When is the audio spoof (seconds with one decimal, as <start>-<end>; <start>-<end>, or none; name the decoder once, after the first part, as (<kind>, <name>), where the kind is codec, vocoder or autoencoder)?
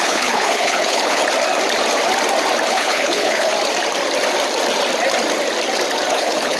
0.0-1.2 (codec, HILCodec); 2.7-3.5; 6.1-6.6